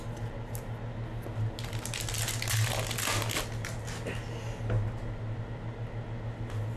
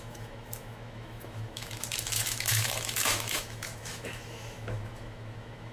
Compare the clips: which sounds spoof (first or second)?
second